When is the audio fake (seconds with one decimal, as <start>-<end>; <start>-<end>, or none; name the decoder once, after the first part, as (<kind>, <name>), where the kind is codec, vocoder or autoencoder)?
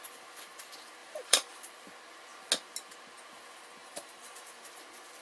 1.0-1.6 (vocoder, BigVGAN v2); 3.8-4.8